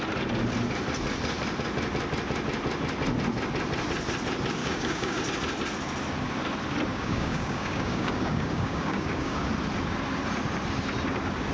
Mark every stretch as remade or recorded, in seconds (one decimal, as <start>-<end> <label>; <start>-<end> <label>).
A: 0.0-4.6 recorded; 4.6-5.2 remade; 5.2-6.9 recorded; 6.9-9.5 remade; 9.5-11.5 recorded